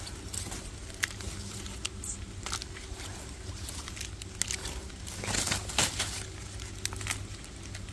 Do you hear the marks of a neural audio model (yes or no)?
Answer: no